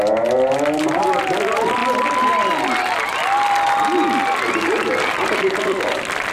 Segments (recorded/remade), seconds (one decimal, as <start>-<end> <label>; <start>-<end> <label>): 0.0-6.3 recorded